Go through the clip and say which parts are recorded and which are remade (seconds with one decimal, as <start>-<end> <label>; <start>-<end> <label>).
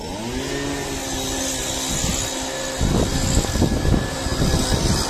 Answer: 0.0-5.1 recorded